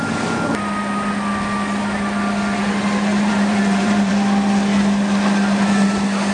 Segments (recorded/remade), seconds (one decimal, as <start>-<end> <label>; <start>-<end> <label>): 0.0-3.1 recorded; 3.1-4.1 remade; 4.1-6.3 recorded